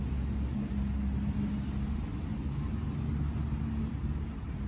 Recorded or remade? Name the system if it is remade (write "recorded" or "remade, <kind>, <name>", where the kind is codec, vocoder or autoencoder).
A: recorded